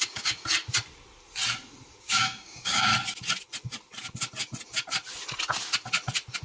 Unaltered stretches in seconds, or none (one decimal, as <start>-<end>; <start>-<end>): 0.4-2.0; 2.9-6.4